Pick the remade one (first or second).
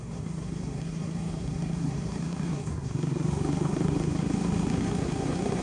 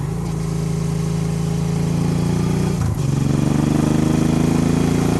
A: first